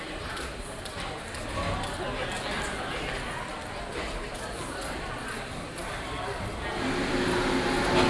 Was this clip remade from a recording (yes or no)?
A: no